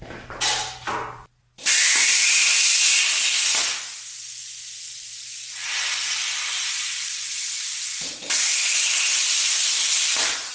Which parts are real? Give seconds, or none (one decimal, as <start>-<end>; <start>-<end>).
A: 2.5-3.1; 4.4-6.5